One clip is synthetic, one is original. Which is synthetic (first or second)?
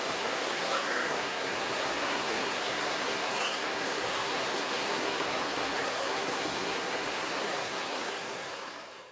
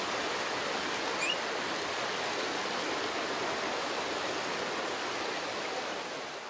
first